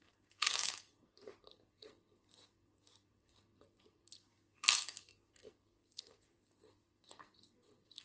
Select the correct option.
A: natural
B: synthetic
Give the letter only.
B